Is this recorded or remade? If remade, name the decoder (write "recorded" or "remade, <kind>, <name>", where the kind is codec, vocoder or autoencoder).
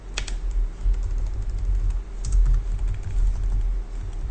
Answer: recorded